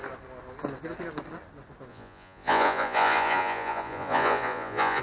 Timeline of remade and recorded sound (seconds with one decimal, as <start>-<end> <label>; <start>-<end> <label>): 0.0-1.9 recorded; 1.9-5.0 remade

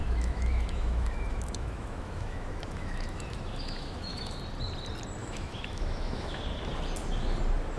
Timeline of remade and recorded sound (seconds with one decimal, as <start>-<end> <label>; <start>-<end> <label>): 0.0-4.4 remade; 4.4-5.2 recorded; 5.2-6.4 remade; 6.4-7.8 recorded

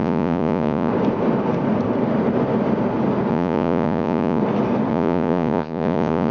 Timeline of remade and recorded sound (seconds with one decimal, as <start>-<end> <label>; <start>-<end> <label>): 0.0-0.9 remade; 0.9-3.3 recorded; 3.3-4.4 remade; 4.4-4.9 recorded; 4.9-6.3 remade

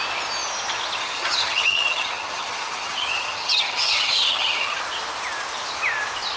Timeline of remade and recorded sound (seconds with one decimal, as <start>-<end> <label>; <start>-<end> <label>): 0.0-1.0 recorded; 1.0-4.8 remade; 4.8-6.4 recorded

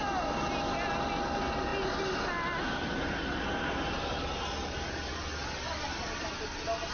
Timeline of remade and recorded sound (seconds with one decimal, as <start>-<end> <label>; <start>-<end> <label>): 0.0-6.9 recorded

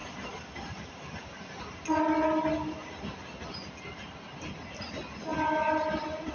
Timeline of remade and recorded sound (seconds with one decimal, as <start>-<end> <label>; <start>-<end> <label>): 0.0-6.3 recorded